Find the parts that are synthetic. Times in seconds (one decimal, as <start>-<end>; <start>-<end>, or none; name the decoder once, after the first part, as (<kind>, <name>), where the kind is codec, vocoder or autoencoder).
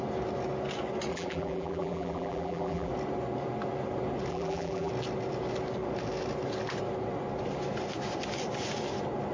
1.1-2.9 (vocoder, BigVGAN v2); 4.3-4.9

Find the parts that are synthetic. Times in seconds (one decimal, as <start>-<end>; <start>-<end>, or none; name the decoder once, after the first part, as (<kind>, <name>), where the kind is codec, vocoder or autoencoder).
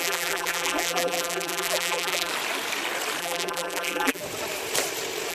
0.0-2.3 (vocoder, BigVGAN v2); 3.2-4.2